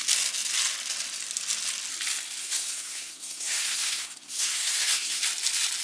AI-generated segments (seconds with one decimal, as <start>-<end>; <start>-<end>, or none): 2.4-5.2